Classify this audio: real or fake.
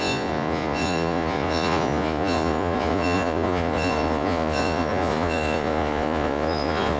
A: fake